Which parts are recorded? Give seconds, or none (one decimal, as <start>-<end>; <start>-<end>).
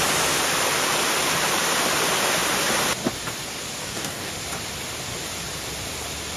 0.0-3.8; 4.3-6.4